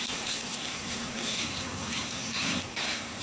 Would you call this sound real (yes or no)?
no